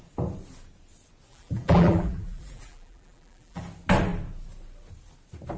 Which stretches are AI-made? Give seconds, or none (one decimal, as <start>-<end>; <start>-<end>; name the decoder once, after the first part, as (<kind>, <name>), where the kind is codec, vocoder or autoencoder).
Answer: 1.3-3.6 (vocoder, BigVGAN v2)